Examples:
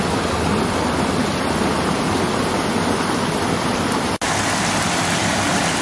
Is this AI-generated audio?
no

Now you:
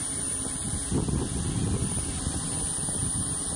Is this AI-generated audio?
no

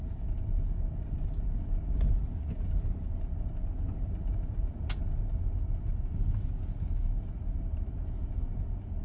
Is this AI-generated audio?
no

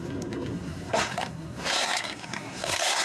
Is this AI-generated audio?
yes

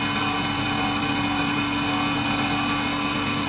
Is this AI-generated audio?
no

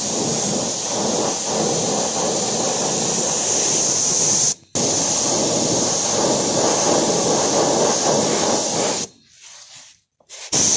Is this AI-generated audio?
no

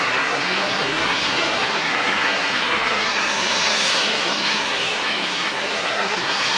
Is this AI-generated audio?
yes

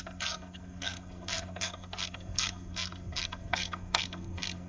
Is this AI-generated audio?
yes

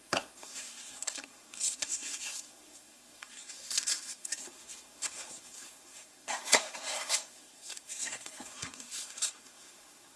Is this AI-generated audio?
yes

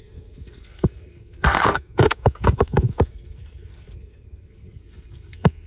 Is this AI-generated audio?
yes